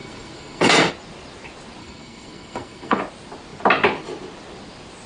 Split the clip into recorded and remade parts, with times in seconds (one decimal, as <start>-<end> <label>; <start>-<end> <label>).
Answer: 0.0-0.9 remade; 0.9-1.8 recorded; 1.8-3.0 remade; 3.0-5.1 recorded